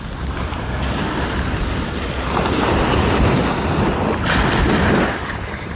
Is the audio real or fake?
real